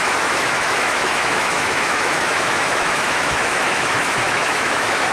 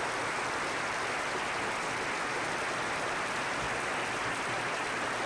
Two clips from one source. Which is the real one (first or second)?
second